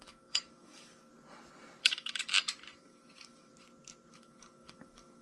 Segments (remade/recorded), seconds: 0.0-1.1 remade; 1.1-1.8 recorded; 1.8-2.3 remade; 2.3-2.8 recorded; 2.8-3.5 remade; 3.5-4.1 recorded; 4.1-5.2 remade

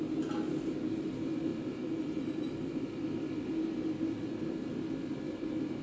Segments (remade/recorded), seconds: 0.0-5.8 recorded